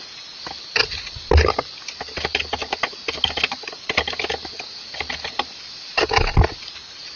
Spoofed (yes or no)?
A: no